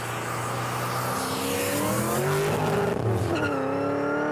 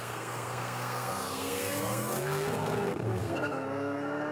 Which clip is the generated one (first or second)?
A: second